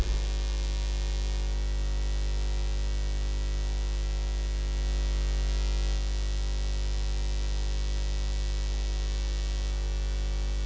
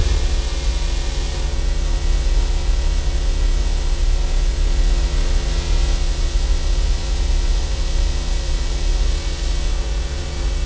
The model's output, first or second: second